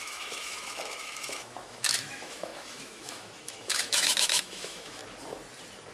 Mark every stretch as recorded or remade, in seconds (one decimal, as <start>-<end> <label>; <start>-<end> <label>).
0.0-5.0 remade; 5.0-5.9 recorded